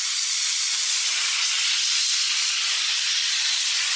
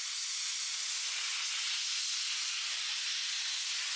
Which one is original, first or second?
second